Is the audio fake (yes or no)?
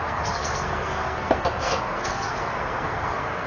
yes